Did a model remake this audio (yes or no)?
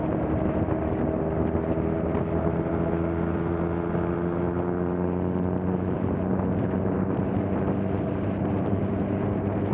no